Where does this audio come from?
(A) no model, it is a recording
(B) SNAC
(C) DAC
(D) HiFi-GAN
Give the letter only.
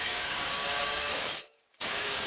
C